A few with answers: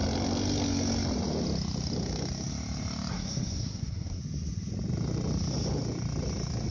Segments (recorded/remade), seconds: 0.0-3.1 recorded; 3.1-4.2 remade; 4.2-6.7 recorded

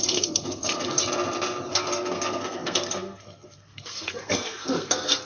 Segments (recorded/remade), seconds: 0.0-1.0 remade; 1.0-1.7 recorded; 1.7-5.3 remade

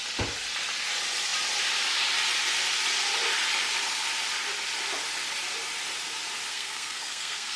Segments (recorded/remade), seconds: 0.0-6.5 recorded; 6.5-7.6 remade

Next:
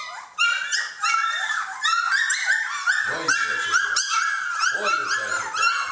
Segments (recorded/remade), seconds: 0.0-5.9 recorded

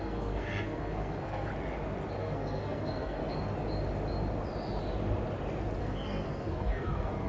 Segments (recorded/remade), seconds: 0.0-1.5 remade; 1.5-2.2 recorded; 2.2-3.2 remade; 3.2-5.8 recorded; 5.8-7.3 remade

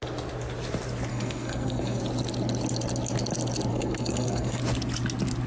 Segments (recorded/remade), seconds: 0.0-1.1 recorded; 1.1-2.0 remade; 2.0-3.7 recorded; 3.7-4.6 remade; 4.6-5.5 recorded

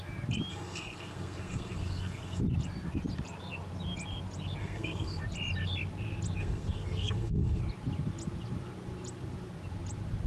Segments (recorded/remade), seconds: 0.0-0.5 recorded; 0.5-2.4 remade; 2.4-4.6 recorded; 4.6-5.2 remade; 5.2-6.4 recorded; 6.4-7.6 remade; 7.6-10.3 recorded

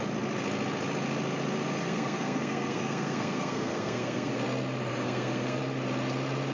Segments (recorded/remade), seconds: 0.0-1.8 recorded; 1.8-4.4 remade; 4.4-4.9 recorded; 4.9-5.6 remade; 5.6-6.5 recorded